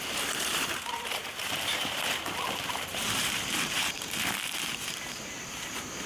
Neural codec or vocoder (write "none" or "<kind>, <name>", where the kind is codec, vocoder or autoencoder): vocoder, BigVGAN v2